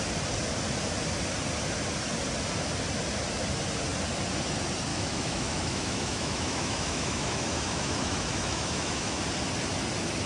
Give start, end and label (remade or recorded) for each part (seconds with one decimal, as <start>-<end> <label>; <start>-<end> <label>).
0.0-4.9 recorded; 4.9-9.2 remade; 9.2-10.3 recorded